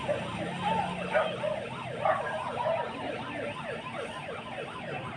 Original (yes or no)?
yes